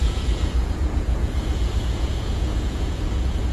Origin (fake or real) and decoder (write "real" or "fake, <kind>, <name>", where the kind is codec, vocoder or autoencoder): fake, vocoder, Vocos